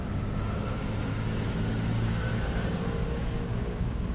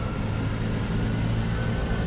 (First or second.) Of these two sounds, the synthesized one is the first